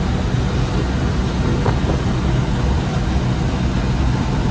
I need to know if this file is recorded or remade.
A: recorded